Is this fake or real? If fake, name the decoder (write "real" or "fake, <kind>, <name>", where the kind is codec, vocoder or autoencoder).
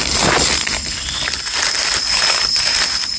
real